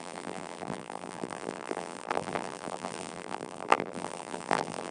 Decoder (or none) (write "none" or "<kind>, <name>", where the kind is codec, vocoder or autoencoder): vocoder, BigVGAN v2